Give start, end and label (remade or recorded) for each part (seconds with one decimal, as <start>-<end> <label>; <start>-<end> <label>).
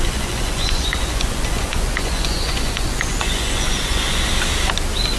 0.0-4.3 remade; 4.3-5.2 recorded